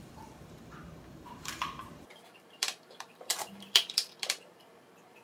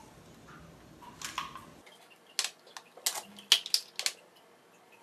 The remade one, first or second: first